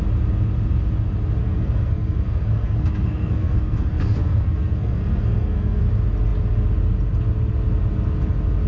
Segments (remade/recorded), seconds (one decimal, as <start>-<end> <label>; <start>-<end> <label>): 0.0-1.4 recorded; 1.4-5.8 remade; 5.8-8.7 recorded